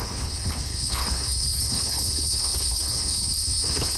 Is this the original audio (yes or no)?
no